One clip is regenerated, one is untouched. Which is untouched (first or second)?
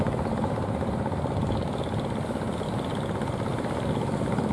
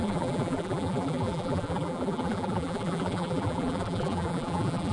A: first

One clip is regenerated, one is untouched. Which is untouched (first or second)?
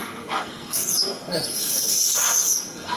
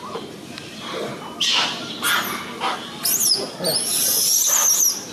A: second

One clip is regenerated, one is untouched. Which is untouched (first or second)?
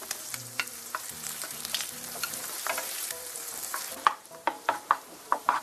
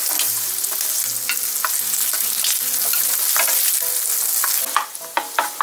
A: second